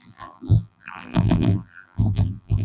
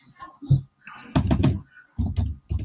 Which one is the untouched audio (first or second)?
second